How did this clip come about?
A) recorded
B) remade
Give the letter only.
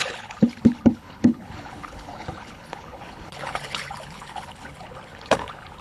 B